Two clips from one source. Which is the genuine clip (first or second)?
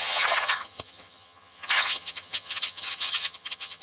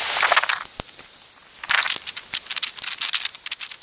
second